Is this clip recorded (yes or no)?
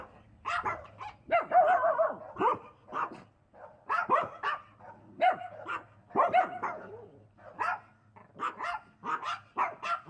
yes